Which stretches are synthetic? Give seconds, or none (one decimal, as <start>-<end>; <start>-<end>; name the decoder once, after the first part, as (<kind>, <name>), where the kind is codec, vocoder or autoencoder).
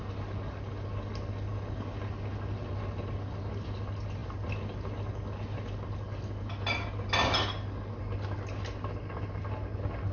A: none